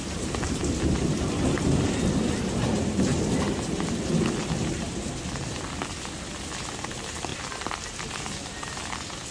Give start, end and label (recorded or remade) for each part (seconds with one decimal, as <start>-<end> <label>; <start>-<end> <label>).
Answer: 0.0-9.3 recorded